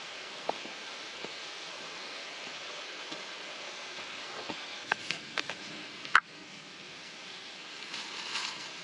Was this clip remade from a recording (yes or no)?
yes